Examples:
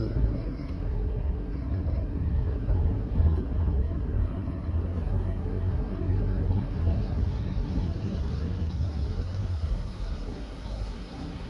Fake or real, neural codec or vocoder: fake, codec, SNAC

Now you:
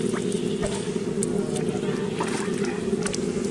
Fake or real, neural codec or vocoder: real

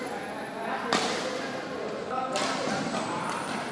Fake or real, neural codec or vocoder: real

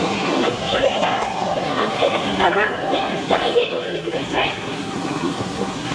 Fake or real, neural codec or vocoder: fake, codec, SNAC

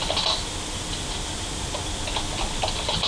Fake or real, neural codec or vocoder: real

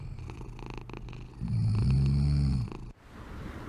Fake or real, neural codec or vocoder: real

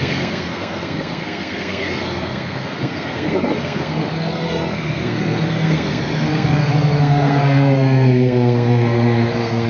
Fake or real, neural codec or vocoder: fake, codec, SNAC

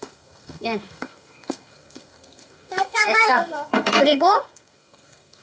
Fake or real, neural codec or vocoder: fake, codec, SNAC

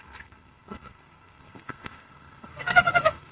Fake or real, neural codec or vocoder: fake, codec, SNAC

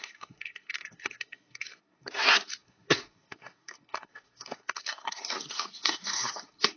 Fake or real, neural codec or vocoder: fake, codec, SNAC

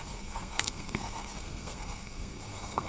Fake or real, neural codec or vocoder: fake, codec, SNAC